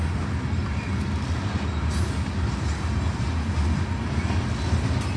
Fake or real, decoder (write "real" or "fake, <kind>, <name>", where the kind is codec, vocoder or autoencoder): real